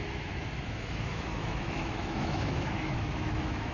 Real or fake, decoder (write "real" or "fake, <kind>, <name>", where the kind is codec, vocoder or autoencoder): fake, autoencoder, DAC-VAE